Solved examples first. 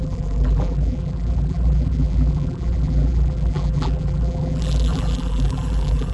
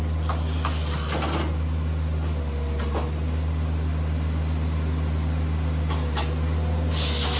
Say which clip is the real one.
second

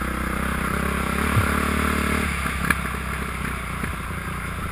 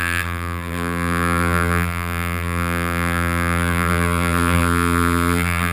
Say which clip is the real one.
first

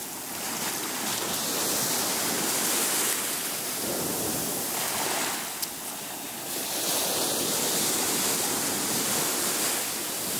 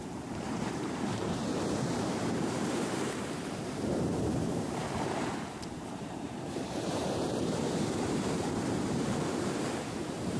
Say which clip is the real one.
first